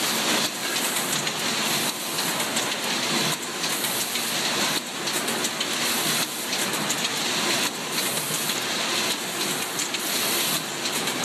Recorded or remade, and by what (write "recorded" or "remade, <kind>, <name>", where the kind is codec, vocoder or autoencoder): recorded